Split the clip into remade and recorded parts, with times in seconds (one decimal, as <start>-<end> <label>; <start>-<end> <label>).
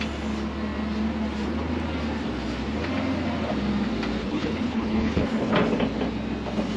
0.0-4.2 recorded; 4.2-5.5 remade; 5.5-6.8 recorded